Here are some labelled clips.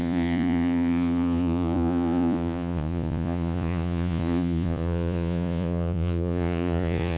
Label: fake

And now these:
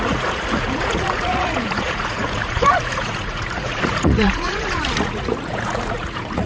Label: fake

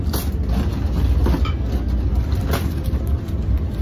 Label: real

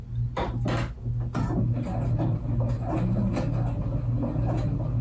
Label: real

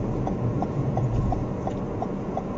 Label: fake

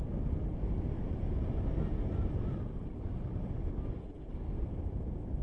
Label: real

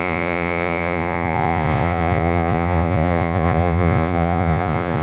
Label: fake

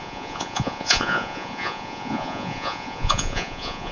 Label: fake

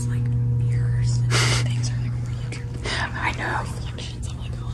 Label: real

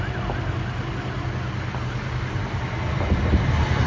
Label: real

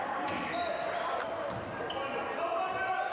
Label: real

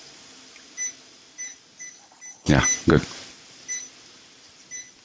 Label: real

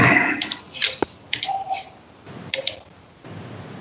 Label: real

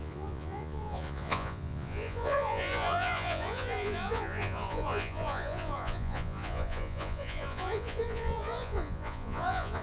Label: fake